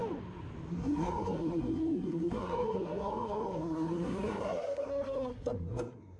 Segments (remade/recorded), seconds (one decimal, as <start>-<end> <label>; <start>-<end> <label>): 0.0-0.7 recorded; 0.7-6.2 remade